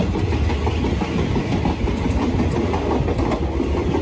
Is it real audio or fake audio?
real